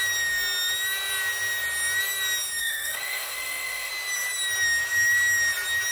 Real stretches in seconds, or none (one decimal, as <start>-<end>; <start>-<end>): 0.0-2.6; 3.9-5.9